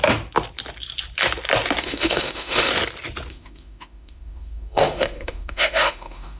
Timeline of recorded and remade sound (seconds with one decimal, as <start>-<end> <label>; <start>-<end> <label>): 0.0-1.8 recorded; 1.8-2.7 remade; 2.7-3.3 recorded; 3.3-6.4 remade